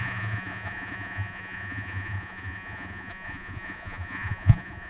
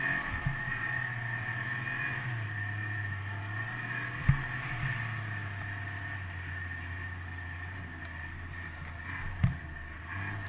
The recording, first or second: second